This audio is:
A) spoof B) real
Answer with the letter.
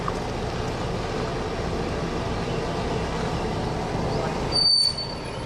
B